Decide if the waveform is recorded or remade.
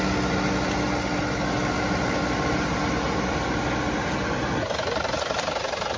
recorded